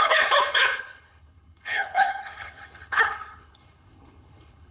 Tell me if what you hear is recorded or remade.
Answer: remade